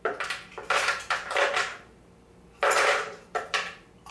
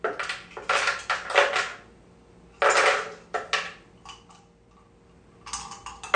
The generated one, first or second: first